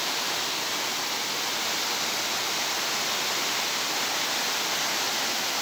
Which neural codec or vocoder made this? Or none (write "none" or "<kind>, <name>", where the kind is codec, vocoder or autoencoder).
none